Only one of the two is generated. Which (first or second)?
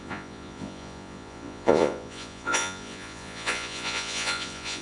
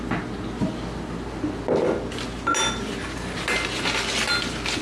first